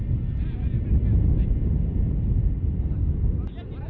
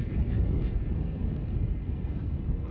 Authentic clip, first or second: first